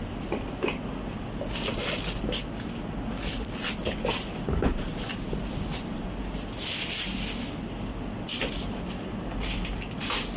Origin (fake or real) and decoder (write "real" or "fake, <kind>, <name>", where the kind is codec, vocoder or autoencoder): real